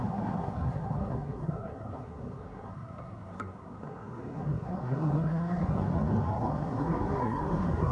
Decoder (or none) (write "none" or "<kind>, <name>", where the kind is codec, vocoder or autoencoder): codec, SNAC